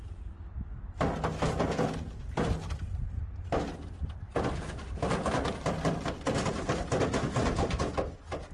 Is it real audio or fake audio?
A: real